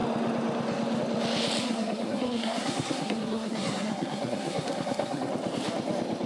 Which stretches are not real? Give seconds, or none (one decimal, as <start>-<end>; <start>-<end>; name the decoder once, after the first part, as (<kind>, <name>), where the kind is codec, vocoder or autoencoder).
1.6-5.3 (codec, SNAC)